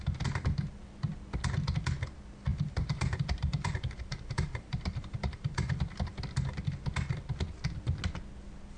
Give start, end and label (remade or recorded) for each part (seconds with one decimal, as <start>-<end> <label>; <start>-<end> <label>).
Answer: 0.0-2.5 recorded; 2.5-5.8 remade; 5.8-8.8 recorded